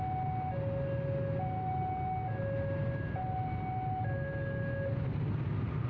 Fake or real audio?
real